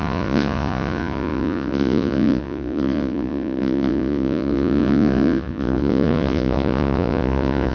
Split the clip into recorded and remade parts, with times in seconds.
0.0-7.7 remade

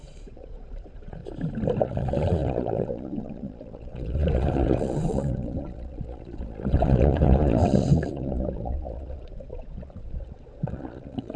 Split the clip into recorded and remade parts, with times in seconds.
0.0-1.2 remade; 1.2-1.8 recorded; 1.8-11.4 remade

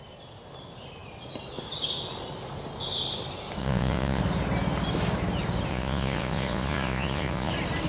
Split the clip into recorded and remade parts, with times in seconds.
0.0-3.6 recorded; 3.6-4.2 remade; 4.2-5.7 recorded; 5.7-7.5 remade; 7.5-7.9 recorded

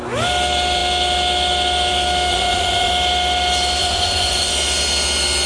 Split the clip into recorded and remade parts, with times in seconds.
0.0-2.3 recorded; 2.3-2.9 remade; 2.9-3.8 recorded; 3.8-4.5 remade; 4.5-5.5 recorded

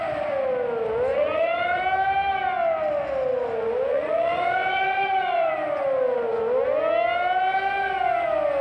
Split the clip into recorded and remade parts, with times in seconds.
0.0-1.1 recorded; 1.1-1.8 remade; 1.8-3.9 recorded; 3.9-5.5 remade; 5.5-8.6 recorded

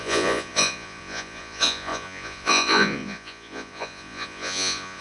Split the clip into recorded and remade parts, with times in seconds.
0.0-5.0 remade

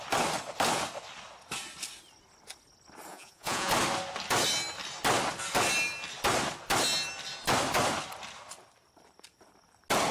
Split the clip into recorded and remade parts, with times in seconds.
0.0-3.1 recorded; 3.1-3.7 remade; 3.7-10.1 recorded

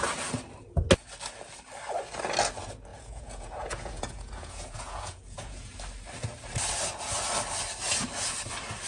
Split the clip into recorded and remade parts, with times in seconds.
0.0-2.9 recorded; 2.9-5.7 remade; 5.7-8.9 recorded